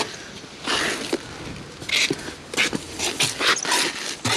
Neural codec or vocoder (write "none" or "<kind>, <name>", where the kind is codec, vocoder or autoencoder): none